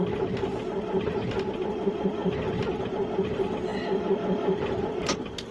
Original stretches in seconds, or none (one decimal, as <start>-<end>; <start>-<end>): 0.0-5.5